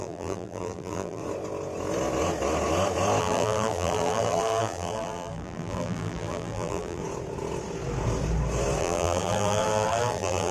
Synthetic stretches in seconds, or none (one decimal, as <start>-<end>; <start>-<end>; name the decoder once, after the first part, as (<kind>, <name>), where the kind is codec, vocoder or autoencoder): 0.0-1.2 (vocoder, BigVGAN v2); 3.2-7.0; 8.8-10.5